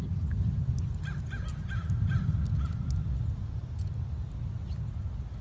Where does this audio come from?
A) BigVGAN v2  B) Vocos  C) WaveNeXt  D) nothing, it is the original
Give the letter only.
D